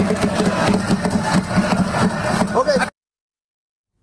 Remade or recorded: recorded